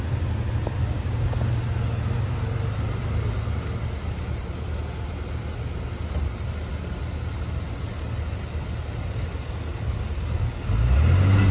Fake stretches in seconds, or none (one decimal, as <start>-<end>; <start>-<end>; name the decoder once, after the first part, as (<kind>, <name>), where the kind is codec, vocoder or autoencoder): 0.8-1.6 (codec, DAC)